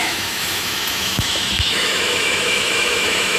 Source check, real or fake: fake